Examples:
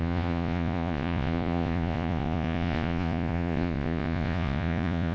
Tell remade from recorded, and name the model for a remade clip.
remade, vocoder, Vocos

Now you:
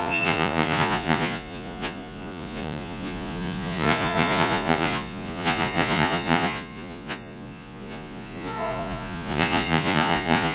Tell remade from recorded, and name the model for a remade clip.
remade, vocoder, Vocos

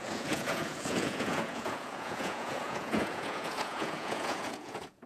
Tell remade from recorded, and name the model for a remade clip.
remade, vocoder, Vocos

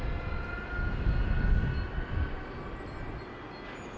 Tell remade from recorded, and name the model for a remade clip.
recorded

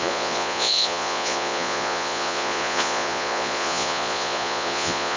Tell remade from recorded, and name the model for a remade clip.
remade, vocoder, Vocos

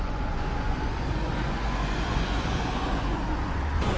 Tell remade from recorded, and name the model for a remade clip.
remade, vocoder, Vocos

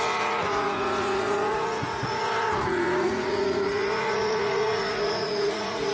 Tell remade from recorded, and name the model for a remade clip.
remade, vocoder, Vocos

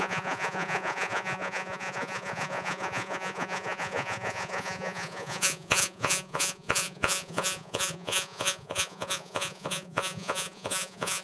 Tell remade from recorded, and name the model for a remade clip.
remade, vocoder, Vocos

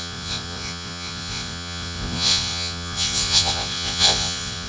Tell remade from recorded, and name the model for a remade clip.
remade, vocoder, Vocos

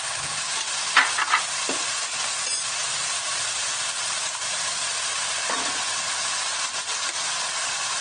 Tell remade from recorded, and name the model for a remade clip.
recorded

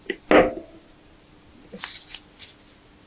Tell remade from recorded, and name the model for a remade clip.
recorded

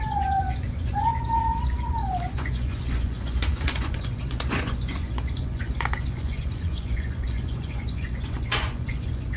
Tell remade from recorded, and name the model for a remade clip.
remade, vocoder, Vocos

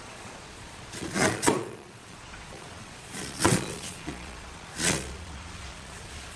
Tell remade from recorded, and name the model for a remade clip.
remade, vocoder, Vocos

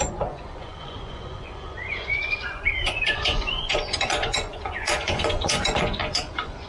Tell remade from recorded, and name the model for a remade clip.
remade, vocoder, Vocos